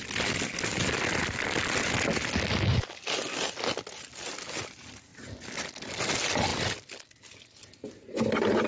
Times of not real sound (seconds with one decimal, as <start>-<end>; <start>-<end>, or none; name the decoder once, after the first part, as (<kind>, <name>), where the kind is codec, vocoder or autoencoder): none